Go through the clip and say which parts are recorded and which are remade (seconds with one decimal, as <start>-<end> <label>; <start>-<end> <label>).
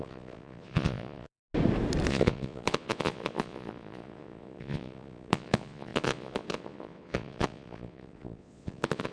0.0-1.4 remade; 1.4-2.1 recorded; 2.1-9.1 remade